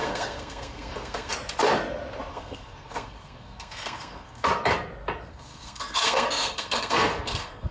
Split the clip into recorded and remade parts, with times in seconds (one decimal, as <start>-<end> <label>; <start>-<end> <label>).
0.0-1.3 remade; 1.3-2.3 recorded; 2.3-4.5 remade; 4.5-5.3 recorded; 5.3-7.7 remade